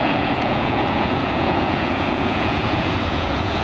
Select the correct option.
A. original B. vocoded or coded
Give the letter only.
B